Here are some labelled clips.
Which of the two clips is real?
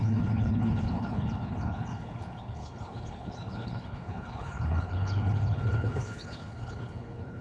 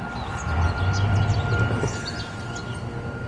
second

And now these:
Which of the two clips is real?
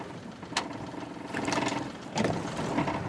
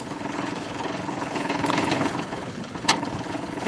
first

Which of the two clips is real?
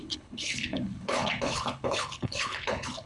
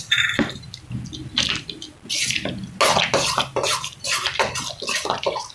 second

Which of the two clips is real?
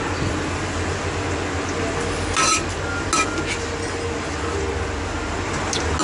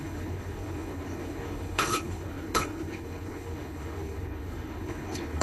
first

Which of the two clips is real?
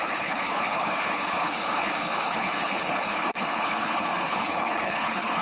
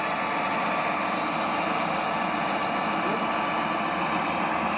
second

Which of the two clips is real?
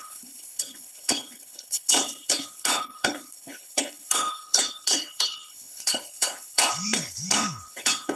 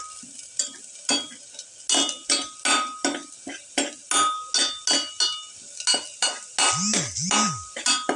second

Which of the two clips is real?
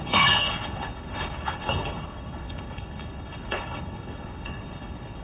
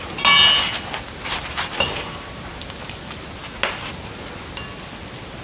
second